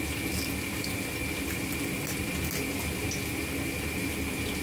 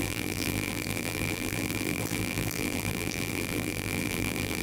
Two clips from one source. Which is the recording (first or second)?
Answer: first